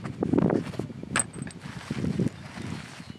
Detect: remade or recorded recorded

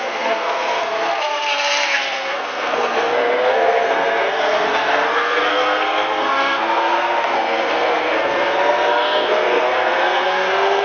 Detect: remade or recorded remade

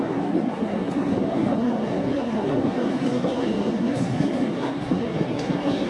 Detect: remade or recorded remade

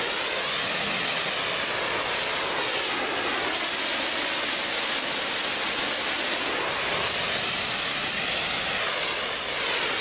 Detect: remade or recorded recorded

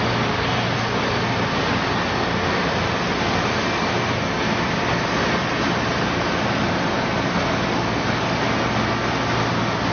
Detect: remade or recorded recorded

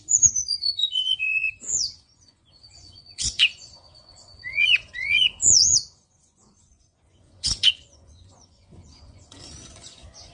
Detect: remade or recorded remade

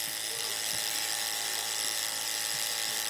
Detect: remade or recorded recorded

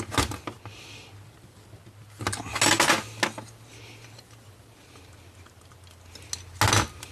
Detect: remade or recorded recorded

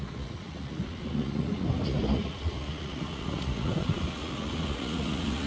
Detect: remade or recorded remade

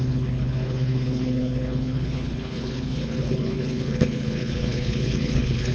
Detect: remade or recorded remade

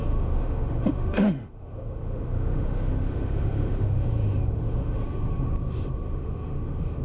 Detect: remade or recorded remade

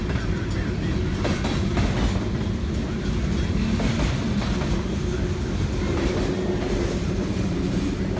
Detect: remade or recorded recorded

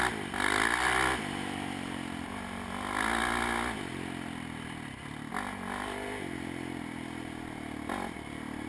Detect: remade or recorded recorded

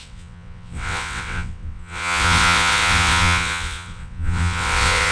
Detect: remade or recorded remade